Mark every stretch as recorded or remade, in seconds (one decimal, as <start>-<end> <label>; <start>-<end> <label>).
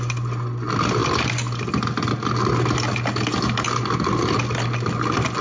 0.0-5.4 recorded